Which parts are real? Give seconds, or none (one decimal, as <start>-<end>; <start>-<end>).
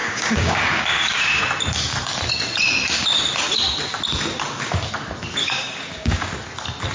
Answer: 1.4-5.4; 6.4-6.9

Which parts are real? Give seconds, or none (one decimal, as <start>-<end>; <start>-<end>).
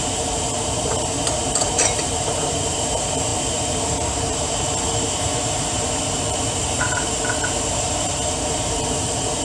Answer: none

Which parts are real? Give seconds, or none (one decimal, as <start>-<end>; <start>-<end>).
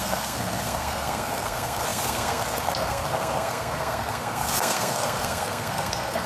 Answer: none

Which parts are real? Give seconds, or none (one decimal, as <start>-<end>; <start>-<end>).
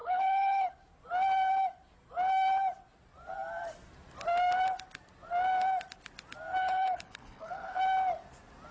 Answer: 0.7-6.6; 7.8-8.7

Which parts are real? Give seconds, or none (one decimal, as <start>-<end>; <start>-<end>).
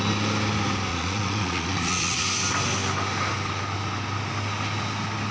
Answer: 0.0-0.9; 2.2-5.3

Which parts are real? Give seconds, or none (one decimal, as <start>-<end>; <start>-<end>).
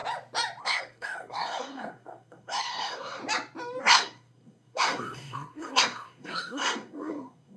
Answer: 0.0-0.6; 3.2-3.8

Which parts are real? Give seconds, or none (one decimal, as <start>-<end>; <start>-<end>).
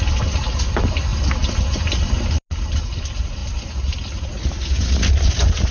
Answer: 0.0-5.7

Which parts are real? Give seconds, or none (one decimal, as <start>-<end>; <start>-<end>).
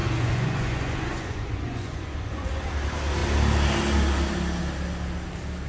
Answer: 2.5-5.7